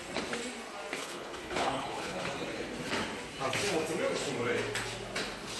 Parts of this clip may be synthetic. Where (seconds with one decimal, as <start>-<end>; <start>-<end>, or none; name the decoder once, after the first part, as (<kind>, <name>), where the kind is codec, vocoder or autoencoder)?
1.0-2.2 (codec, HILCodec)